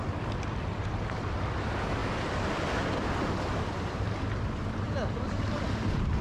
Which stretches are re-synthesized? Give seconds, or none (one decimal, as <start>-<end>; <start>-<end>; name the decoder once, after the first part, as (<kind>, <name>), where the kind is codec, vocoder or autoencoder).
none